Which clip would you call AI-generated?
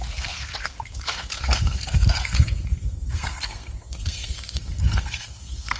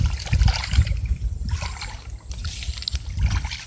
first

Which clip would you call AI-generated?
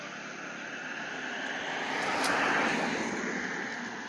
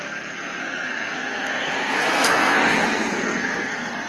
second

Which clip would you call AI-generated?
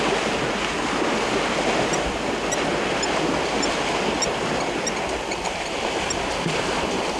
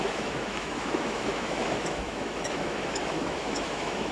second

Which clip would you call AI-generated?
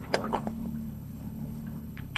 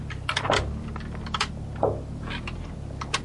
first